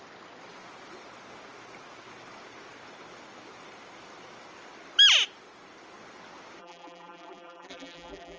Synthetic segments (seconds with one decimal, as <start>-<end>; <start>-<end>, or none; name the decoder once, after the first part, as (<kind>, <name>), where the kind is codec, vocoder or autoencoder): 6.6-8.4 (vocoder, BigVGAN v2)